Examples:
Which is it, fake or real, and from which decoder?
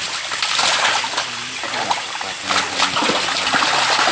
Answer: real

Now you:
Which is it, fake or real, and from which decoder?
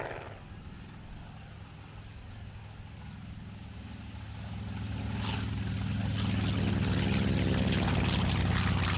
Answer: real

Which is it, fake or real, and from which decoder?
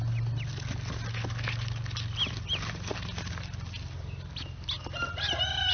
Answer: real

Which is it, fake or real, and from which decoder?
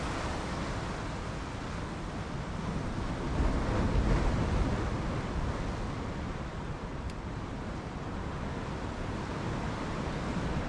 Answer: real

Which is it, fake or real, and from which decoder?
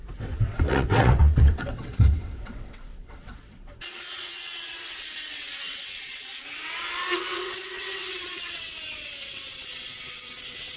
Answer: fake, vocoder, WaveNeXt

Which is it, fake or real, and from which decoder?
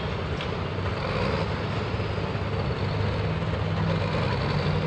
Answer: real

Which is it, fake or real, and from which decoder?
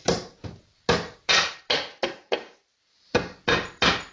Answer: real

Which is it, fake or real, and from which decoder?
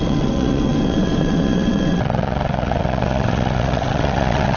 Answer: fake, vocoder, WaveNeXt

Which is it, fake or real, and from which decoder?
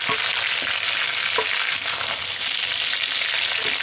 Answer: real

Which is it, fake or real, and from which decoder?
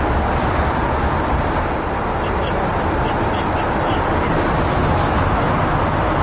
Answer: real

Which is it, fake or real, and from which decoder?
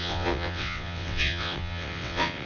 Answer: fake, vocoder, WaveNeXt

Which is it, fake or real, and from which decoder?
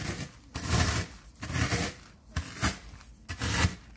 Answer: real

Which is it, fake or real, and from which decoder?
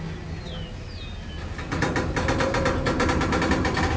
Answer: real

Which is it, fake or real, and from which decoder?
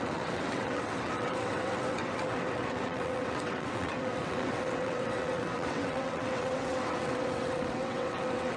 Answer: fake, vocoder, WaveNeXt